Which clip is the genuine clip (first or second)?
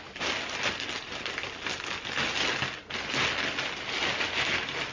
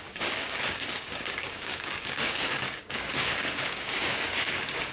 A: first